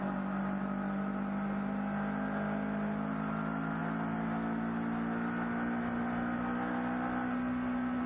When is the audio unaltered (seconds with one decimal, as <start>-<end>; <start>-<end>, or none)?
0.0-8.1